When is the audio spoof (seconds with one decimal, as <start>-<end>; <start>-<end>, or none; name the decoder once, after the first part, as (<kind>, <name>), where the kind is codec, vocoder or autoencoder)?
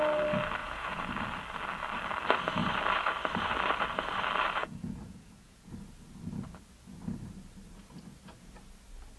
0.6-1.1 (vocoder, Vocos); 4.6-5.7